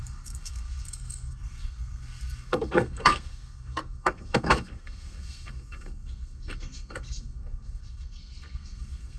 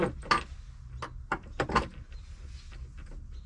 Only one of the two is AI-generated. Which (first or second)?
first